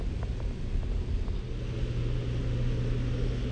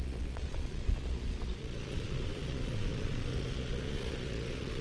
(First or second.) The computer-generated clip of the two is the second